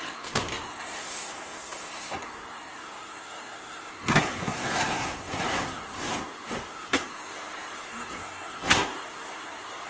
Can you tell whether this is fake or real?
fake